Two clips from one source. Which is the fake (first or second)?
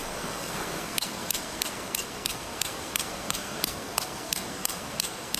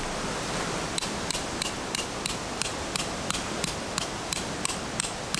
first